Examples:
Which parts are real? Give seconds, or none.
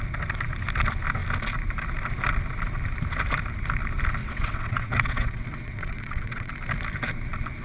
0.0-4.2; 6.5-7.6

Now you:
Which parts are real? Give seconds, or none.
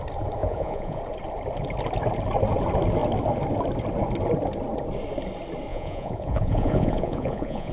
0.0-0.4; 1.0-5.7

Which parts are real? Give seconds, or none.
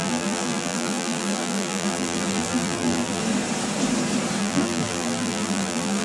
3.2-4.4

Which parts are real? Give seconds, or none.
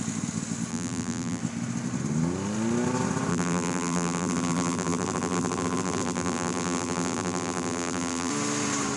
0.0-0.7; 1.4-3.3; 8.3-9.0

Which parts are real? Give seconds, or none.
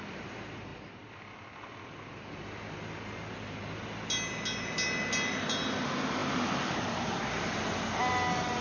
0.0-8.6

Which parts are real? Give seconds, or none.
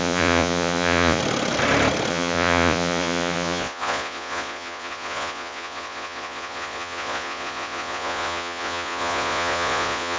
1.2-2.1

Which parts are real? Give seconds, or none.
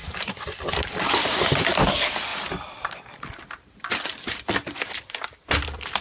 0.7-2.3